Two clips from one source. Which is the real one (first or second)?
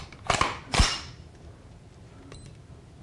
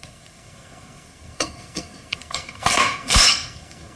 first